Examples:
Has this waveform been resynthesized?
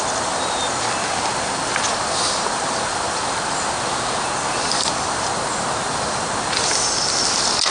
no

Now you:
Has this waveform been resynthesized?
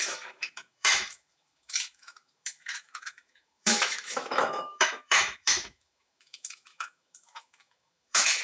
yes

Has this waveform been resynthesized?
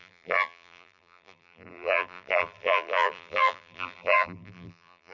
yes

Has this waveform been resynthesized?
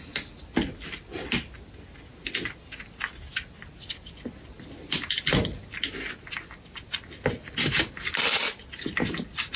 no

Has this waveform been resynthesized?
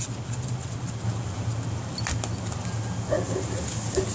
no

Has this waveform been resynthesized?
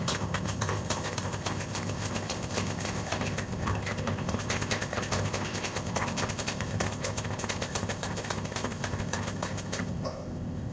yes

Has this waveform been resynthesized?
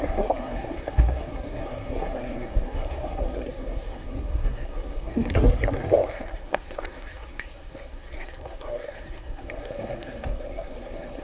yes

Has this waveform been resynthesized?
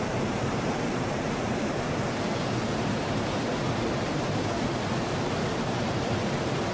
yes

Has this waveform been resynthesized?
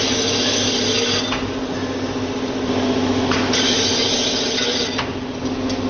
no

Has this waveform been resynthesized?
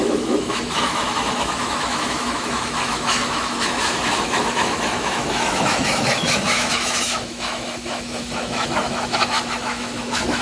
yes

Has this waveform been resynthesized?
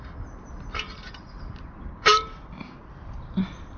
no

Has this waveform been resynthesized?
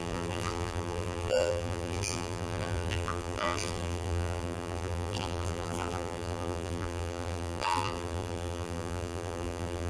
yes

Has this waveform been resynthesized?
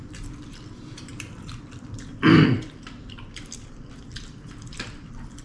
yes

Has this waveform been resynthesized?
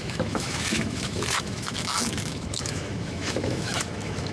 yes